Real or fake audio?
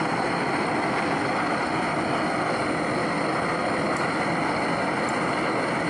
real